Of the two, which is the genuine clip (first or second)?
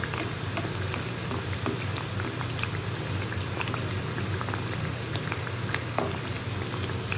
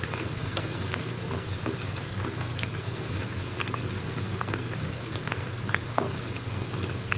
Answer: first